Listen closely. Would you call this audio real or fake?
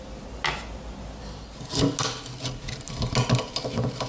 real